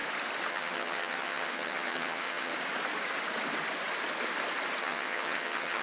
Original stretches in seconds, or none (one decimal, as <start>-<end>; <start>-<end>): 0.0-0.5; 2.5-4.8